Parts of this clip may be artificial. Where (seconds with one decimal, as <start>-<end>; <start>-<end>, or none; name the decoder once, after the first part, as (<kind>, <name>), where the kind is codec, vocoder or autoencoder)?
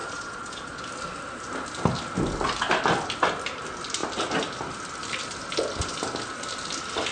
0.0-0.8 (vocoder, Vocos)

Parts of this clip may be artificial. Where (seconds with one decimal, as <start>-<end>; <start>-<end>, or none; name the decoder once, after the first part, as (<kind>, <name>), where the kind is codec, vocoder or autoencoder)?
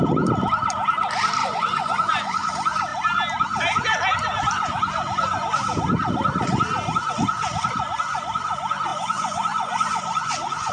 1.4-2.5 (vocoder, Vocos); 8.9-10.7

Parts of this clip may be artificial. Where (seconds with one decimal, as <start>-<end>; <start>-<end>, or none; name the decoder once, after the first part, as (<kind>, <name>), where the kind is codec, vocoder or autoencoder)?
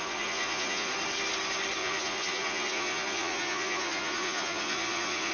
0.0-0.9 (vocoder, Vocos); 1.8-5.3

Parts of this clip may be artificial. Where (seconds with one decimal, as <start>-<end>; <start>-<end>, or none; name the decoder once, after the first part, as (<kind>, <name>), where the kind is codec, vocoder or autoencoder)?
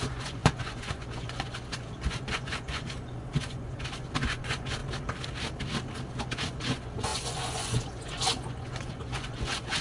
0.0-4.8 (vocoder, Vocos); 6.1-9.8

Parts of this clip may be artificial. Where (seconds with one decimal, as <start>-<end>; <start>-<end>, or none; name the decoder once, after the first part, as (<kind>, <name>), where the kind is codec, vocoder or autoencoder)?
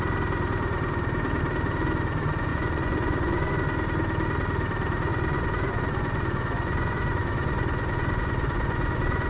2.5-3.5 (vocoder, Vocos); 5.1-9.3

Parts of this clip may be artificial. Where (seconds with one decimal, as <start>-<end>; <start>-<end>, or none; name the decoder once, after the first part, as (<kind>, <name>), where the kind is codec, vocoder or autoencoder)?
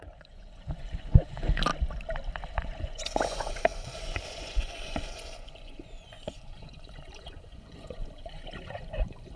0.0-1.7 (vocoder, Vocos); 2.4-9.4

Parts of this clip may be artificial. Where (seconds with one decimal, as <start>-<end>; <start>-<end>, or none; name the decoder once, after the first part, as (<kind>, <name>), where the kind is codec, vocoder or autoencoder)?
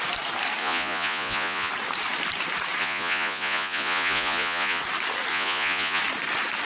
0.6-1.7 (vocoder, Vocos); 2.8-4.8; 5.3-6.0